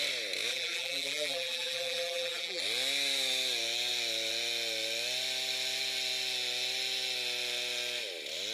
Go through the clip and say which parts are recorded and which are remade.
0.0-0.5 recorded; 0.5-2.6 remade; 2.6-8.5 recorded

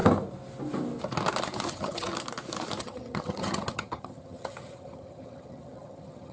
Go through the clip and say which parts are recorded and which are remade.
0.0-1.7 recorded; 1.7-2.1 remade; 2.1-2.8 recorded; 2.8-6.3 remade

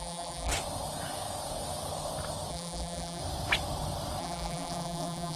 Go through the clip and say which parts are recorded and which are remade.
0.0-0.5 remade; 0.5-2.5 recorded; 2.5-3.2 remade; 3.2-4.2 recorded; 4.2-5.4 remade

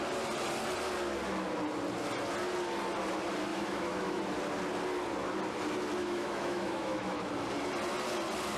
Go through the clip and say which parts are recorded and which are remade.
0.0-3.5 recorded; 3.5-4.2 remade; 4.2-6.0 recorded; 6.0-7.3 remade; 7.3-8.6 recorded

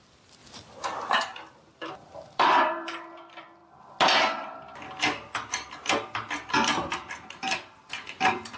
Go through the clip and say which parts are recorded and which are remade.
0.0-0.4 remade; 0.4-1.1 recorded; 1.1-3.6 remade; 3.6-6.5 recorded; 6.5-8.6 remade

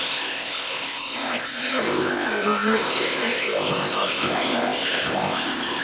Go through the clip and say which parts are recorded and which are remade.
0.0-5.8 remade